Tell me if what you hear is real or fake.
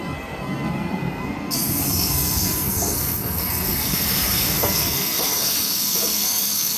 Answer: fake